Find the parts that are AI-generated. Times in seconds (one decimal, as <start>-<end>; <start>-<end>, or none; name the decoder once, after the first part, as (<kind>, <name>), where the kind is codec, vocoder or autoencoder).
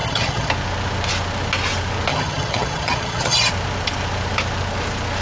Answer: 0.0-0.5 (vocoder, HiFi-GAN); 2.1-3.5